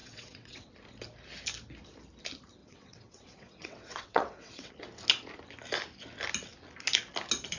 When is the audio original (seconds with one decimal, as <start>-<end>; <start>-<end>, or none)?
0.7-2.6; 4.7-7.6